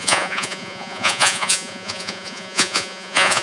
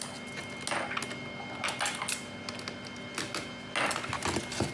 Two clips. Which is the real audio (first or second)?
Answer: second